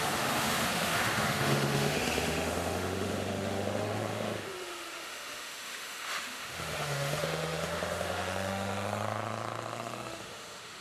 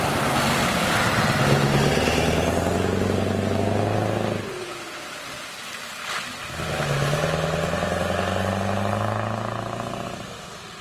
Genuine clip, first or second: second